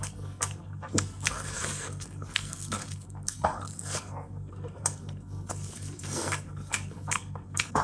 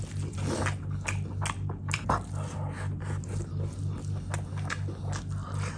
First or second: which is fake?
first